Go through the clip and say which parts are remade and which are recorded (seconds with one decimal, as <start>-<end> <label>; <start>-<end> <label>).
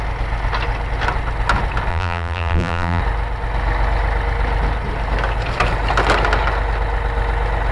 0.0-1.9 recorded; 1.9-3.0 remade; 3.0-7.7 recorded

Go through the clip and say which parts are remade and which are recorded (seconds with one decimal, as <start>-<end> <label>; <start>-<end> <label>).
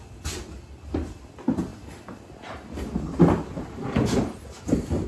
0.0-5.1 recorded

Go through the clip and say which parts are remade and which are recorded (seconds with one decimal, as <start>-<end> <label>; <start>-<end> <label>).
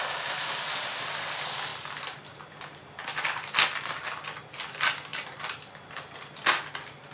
0.0-7.1 recorded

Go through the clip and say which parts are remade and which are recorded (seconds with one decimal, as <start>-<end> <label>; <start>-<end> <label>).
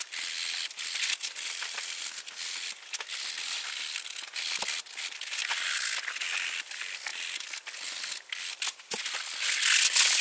0.0-10.2 recorded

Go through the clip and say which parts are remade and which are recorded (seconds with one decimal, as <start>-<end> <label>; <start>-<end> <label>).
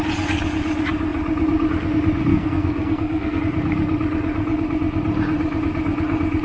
0.0-2.3 recorded; 2.3-3.4 remade; 3.4-6.4 recorded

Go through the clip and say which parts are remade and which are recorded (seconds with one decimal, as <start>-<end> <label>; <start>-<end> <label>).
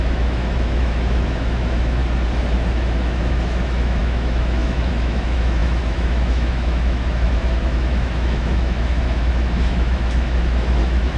0.0-2.0 remade; 2.0-2.5 recorded; 2.5-11.2 remade